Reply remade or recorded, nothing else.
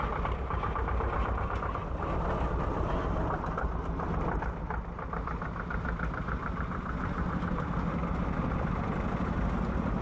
recorded